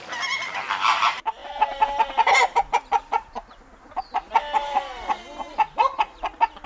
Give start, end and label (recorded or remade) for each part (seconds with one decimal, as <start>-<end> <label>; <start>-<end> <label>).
0.0-6.7 recorded